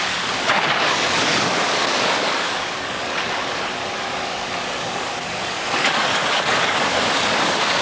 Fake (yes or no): yes